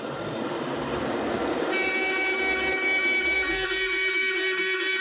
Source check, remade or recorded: remade